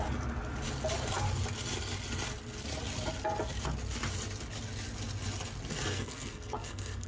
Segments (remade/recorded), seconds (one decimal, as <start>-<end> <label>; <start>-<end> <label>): 0.0-5.9 recorded; 5.9-7.1 remade